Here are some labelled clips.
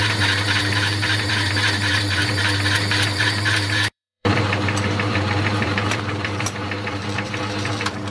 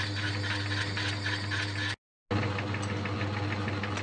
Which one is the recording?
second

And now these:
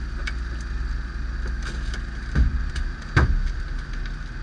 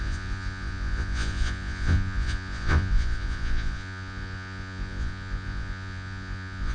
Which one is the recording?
first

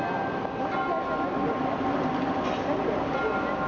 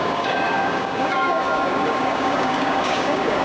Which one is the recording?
first